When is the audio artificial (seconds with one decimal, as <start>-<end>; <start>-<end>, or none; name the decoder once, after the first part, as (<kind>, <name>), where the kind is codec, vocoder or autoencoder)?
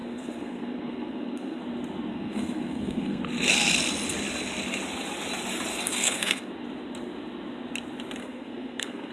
0.0-1.6 (codec, SNAC); 2.1-3.2; 5.7-6.5; 8.2-9.1